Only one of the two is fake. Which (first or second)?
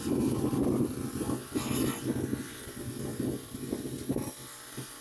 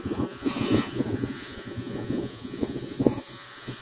second